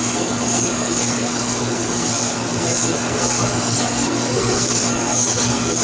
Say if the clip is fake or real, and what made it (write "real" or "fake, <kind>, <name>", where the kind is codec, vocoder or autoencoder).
fake, codec, SNAC